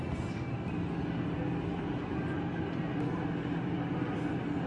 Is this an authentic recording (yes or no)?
yes